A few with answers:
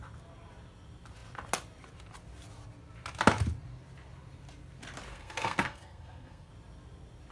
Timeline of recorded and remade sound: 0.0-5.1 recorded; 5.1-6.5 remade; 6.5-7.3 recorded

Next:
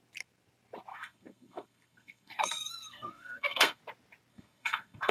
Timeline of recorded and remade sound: 0.0-0.9 recorded; 0.9-3.8 remade; 3.8-4.3 recorded; 4.3-5.1 remade

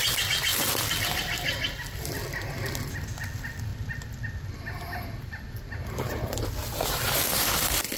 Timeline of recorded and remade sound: 0.0-8.0 recorded